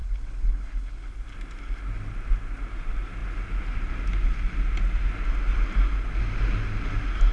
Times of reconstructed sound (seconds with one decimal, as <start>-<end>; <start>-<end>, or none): 0.0-1.1

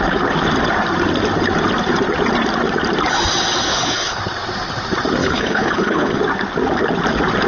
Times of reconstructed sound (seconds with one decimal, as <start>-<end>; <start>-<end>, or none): 3.7-4.2; 5.2-6.2

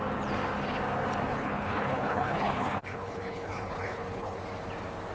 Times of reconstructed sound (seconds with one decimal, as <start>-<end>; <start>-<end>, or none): 1.3-4.4

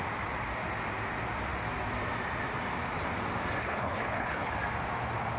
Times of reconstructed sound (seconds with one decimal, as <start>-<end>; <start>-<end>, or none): 3.6-4.5

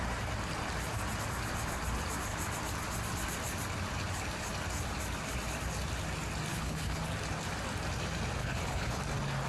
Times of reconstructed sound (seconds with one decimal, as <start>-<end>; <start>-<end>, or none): 6.5-7.0; 8.4-9.0

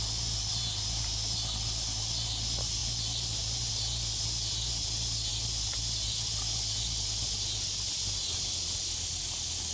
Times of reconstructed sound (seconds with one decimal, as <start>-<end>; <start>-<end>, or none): none